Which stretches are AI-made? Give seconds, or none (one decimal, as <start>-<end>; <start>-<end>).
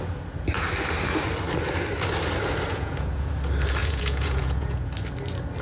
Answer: 2.7-3.3; 3.8-4.9